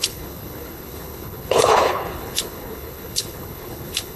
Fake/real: fake